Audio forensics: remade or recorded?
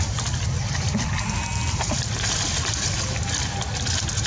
recorded